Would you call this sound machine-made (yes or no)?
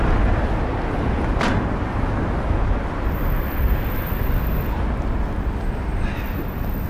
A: no